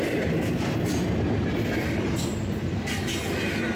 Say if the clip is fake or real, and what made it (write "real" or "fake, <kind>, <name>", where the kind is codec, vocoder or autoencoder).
real